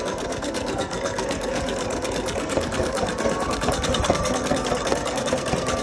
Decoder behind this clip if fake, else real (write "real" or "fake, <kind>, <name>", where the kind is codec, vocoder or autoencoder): fake, codec, SNAC